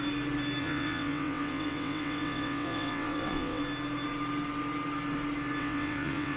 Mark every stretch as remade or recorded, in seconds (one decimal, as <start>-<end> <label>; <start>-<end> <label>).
0.0-0.6 recorded; 0.6-3.6 remade; 3.6-5.6 recorded; 5.6-6.4 remade